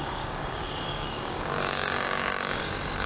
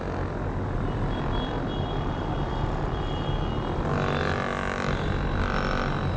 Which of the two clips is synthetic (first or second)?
first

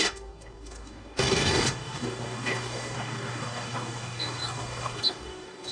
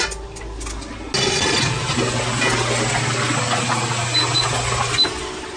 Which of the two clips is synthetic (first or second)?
first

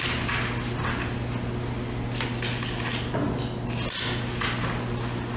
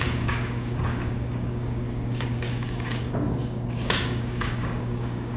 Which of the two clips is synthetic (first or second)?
second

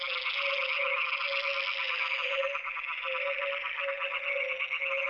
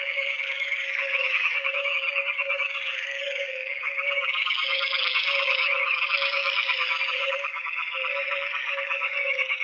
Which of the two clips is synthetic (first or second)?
second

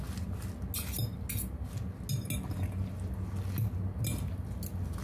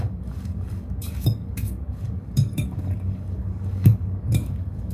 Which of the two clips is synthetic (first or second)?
second